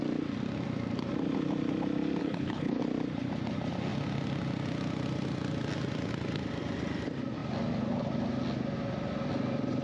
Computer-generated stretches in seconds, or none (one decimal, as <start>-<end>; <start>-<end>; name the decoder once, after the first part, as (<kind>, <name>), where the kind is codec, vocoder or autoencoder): 2.2-2.8 (codec, HILCodec)